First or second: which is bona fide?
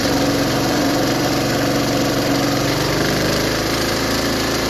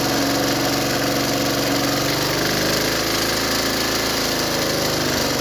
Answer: second